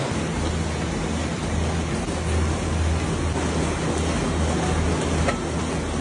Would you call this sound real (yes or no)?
yes